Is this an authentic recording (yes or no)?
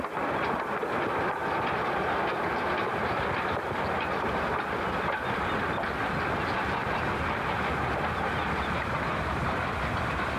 yes